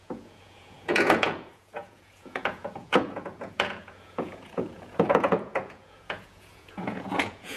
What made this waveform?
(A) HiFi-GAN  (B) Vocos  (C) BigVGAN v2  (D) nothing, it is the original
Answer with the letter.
B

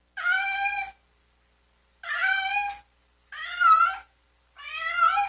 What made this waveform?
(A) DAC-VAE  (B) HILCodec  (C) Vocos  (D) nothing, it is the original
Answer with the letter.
D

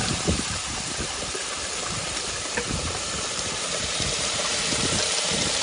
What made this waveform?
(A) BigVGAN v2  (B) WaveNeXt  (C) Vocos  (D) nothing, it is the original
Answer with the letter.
A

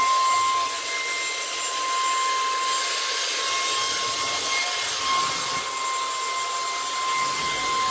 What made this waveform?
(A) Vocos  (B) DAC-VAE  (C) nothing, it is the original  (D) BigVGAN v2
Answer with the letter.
C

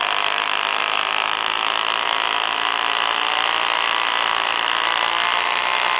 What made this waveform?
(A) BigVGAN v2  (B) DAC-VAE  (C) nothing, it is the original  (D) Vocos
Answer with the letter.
C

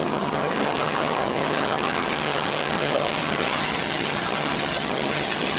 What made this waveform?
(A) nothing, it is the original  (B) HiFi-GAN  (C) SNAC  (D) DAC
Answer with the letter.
B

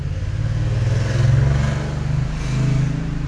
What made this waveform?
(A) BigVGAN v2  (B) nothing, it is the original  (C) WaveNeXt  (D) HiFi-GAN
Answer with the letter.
B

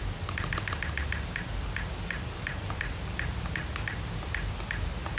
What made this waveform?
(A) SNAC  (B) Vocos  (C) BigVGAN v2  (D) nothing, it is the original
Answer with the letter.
D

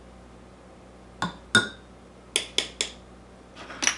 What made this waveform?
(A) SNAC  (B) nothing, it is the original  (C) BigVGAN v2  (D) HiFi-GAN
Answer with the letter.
B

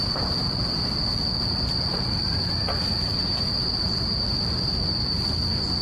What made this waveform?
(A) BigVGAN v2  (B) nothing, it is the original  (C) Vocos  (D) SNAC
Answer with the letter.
A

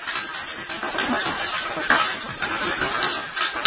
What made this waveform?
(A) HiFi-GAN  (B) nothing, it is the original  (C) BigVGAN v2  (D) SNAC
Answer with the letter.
B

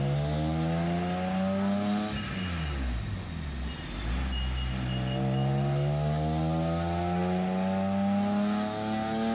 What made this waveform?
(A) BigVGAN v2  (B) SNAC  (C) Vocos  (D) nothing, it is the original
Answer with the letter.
D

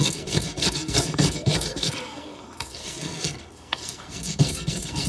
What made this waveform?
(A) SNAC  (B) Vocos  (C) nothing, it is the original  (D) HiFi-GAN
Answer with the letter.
A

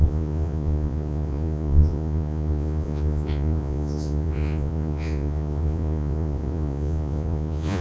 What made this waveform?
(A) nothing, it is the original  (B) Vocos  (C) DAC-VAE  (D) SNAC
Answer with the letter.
B